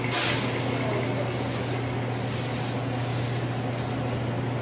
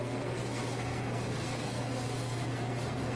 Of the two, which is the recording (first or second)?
first